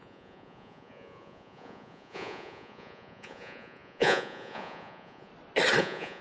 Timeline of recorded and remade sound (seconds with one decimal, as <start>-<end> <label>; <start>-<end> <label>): 0.0-5.3 remade; 5.3-5.8 recorded; 5.8-6.2 remade